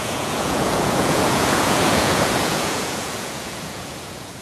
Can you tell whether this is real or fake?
fake